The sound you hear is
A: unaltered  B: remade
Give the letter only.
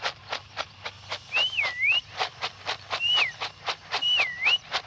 B